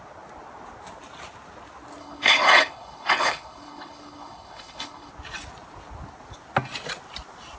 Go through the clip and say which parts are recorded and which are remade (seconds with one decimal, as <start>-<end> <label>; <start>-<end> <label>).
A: 0.0-2.0 recorded; 2.0-5.1 remade; 5.1-7.6 recorded